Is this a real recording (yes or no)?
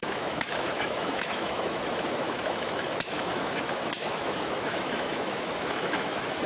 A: no